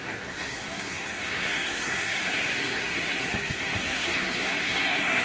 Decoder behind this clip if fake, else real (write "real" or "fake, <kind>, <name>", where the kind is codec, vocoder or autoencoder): fake, codec, SNAC